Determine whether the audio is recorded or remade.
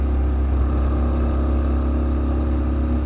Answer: recorded